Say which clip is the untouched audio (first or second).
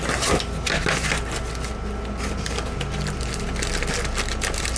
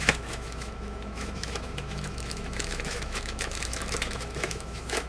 first